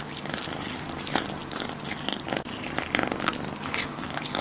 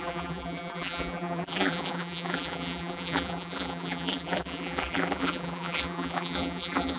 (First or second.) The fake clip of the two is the second